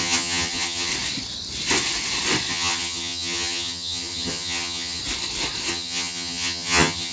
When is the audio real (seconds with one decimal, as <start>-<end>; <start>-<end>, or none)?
0.9-2.5; 5.0-5.7